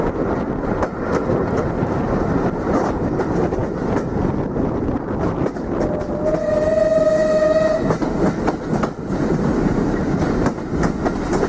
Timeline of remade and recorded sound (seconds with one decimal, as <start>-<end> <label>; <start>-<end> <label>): 0.0-11.5 recorded